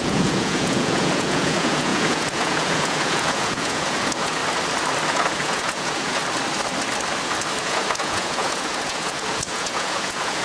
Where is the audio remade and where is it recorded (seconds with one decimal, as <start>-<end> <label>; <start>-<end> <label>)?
0.0-4.4 remade; 4.4-5.1 recorded; 5.1-6.2 remade; 6.2-7.6 recorded; 7.6-10.4 remade